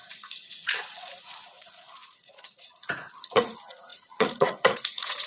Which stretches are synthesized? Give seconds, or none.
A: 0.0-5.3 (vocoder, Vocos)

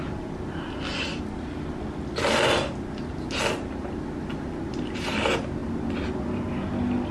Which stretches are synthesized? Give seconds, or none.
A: none

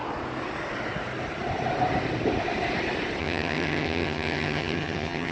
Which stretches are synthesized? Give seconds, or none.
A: 3.2-5.3 (vocoder, HiFi-GAN)

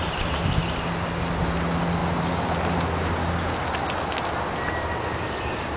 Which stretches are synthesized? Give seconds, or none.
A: none

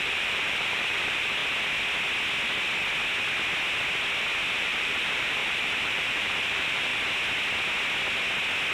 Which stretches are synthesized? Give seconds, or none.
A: 0.0-1.4 (vocoder, BigVGAN v2); 4.5-6.9

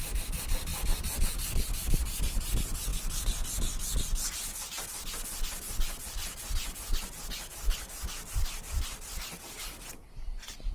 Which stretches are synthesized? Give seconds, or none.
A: 0.7-2.0 (vocoder, BigVGAN v2); 5.3-9.6

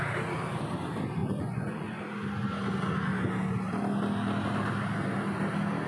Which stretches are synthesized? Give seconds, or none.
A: 1.2-2.0 (vocoder, Vocos)

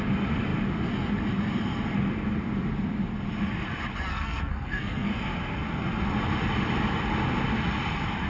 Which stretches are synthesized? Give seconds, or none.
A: 4.1-5.1 (codec, SNAC)